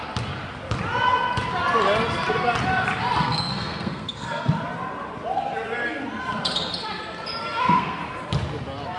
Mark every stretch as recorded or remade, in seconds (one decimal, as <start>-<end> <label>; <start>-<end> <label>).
0.0-3.2 recorded; 3.2-4.5 remade; 4.5-7.4 recorded; 7.4-8.0 remade; 8.0-9.0 recorded